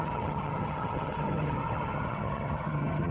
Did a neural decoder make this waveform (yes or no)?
yes